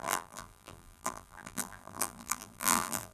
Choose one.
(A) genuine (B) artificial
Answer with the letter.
B